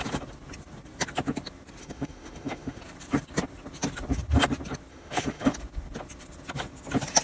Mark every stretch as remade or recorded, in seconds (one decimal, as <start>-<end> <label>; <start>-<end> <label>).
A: 0.0-1.8 recorded; 1.8-2.8 remade; 2.8-4.9 recorded; 4.9-5.5 remade; 5.5-7.2 recorded